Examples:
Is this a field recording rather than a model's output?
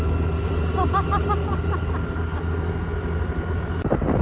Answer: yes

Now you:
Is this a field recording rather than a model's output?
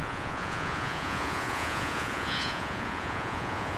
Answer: no